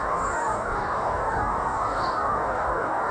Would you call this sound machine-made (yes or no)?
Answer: yes